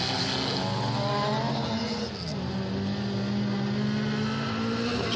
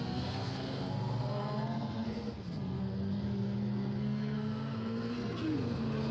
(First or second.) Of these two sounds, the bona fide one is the first